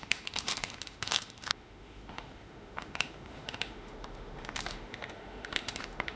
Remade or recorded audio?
remade